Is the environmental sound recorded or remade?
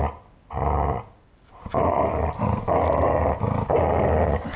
recorded